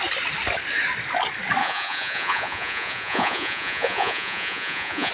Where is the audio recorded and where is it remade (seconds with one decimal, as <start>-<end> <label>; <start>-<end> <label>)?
0.0-1.6 recorded; 1.6-5.1 remade